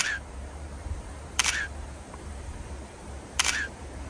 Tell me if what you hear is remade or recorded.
remade